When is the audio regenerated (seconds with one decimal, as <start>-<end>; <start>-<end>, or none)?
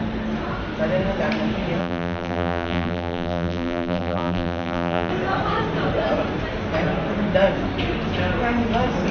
1.8-5.1